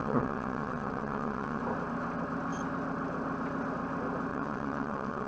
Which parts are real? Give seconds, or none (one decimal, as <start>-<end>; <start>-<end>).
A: 1.6-4.3